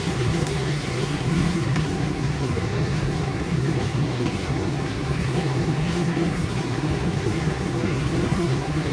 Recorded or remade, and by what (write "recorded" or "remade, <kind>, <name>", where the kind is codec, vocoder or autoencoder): remade, codec, SNAC